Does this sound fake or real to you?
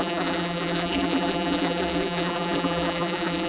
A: fake